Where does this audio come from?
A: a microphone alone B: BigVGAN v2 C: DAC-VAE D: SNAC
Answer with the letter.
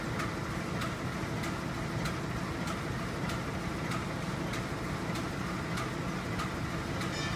A